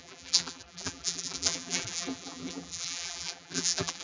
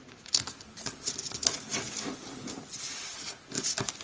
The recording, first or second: second